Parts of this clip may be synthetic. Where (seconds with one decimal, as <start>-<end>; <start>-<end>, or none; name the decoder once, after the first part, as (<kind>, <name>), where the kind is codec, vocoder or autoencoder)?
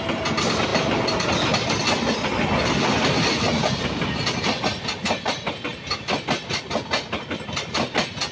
none